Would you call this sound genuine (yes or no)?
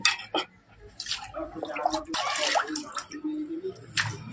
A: yes